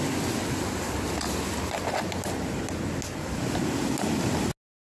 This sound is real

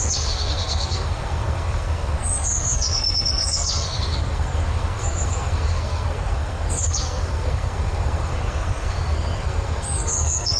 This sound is fake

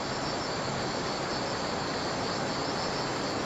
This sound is real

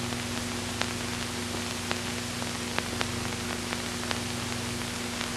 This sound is real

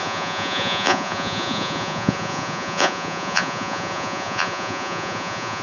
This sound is fake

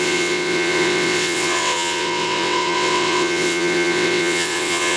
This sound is fake